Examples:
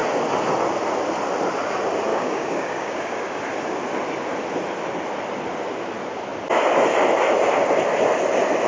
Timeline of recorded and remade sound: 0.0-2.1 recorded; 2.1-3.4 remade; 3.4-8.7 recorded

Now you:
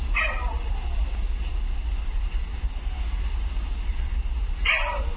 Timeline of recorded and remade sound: 0.0-5.2 recorded

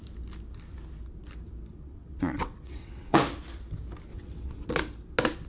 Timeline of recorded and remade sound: 0.0-1.7 recorded; 1.7-3.2 remade; 3.2-4.1 recorded; 4.1-4.7 remade; 4.7-5.5 recorded